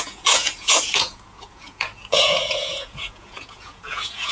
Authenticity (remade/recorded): remade